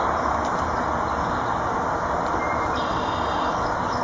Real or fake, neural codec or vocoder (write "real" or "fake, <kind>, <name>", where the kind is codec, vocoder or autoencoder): real